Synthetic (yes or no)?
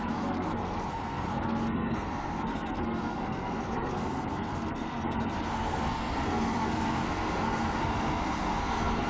yes